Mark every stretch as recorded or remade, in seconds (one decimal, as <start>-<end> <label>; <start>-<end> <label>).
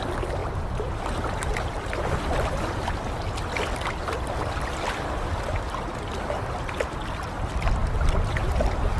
0.0-9.0 recorded